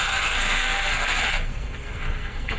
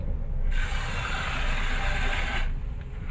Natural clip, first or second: second